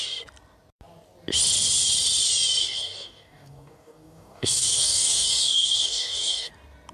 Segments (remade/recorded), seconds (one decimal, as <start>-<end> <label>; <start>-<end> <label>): 0.0-2.6 recorded; 2.6-6.5 remade; 6.5-6.9 recorded